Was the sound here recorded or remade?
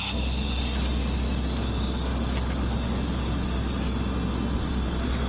recorded